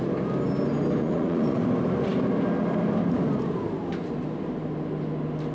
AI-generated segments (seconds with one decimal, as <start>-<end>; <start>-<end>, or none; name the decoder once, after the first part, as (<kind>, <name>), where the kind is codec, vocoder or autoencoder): 1.0-1.6 (vocoder, Vocos)